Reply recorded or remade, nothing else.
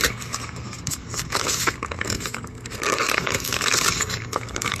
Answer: remade